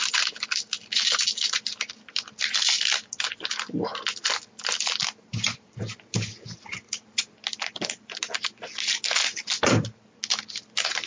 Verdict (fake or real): real